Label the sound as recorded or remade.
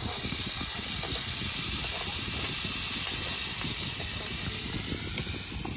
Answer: recorded